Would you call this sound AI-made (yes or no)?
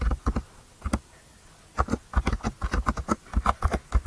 no